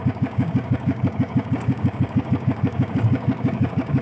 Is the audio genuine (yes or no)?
no